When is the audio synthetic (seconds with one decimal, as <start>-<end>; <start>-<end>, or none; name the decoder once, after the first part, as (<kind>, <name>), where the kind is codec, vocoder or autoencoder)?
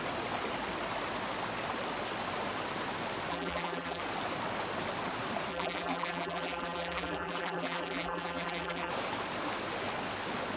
3.3-4.0 (vocoder, BigVGAN v2); 5.5-8.9